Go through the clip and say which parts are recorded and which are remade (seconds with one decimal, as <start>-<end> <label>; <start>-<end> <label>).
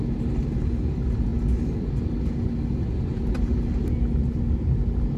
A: 0.0-3.1 recorded; 3.1-3.9 remade; 3.9-5.2 recorded